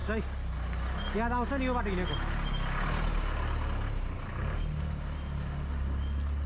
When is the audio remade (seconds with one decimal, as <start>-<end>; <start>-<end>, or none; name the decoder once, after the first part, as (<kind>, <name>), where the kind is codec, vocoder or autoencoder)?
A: none

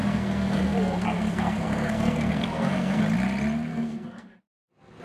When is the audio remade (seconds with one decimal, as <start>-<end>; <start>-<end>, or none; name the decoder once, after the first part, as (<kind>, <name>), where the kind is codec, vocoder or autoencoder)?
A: 0.0-3.0 (codec, SNAC); 3.7-4.4